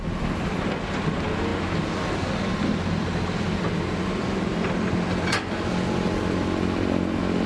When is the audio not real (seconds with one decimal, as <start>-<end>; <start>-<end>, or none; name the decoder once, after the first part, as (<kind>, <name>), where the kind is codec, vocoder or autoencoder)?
none